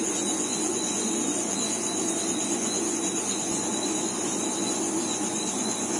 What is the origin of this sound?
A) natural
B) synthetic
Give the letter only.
B